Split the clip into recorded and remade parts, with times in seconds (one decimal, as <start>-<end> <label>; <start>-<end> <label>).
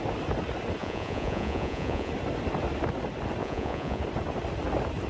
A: 0.0-0.8 recorded; 0.8-2.1 remade; 2.1-3.4 recorded; 3.4-4.0 remade; 4.0-5.1 recorded